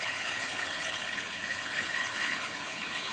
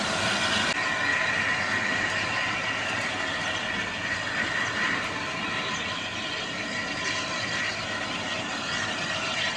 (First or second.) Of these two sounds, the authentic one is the second